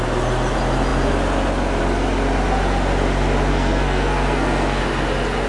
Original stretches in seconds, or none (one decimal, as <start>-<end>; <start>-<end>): 0.0-3.5; 4.8-5.5